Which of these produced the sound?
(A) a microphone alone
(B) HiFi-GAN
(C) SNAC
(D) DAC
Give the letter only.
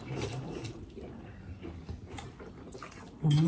A